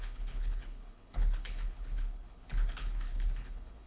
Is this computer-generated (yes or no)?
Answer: yes